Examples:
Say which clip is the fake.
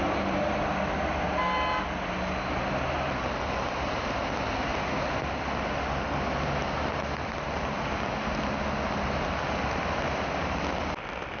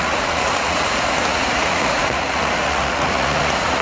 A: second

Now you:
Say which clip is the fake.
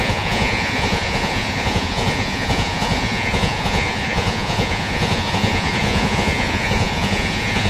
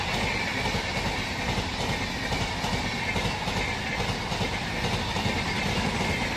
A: first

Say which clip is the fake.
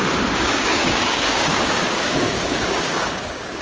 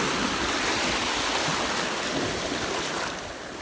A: first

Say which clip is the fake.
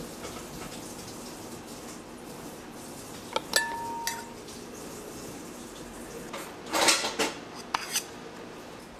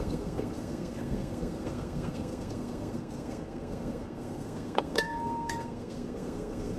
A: second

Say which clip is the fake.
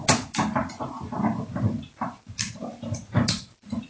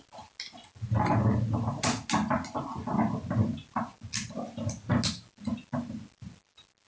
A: first